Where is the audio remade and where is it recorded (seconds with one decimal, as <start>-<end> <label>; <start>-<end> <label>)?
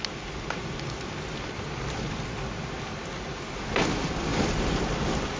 0.0-5.4 recorded